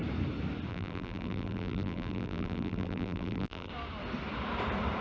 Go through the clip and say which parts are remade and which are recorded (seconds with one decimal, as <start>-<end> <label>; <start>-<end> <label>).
0.0-0.7 recorded; 0.7-3.7 remade; 3.7-5.0 recorded